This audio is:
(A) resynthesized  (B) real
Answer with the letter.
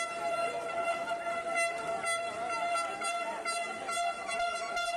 B